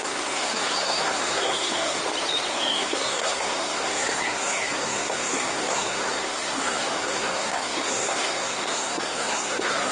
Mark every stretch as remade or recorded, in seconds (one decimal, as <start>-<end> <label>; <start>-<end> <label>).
0.0-2.0 remade; 2.0-2.5 recorded; 2.5-9.9 remade